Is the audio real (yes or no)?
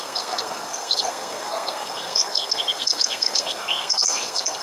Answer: no